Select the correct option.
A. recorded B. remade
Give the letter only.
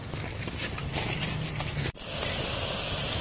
A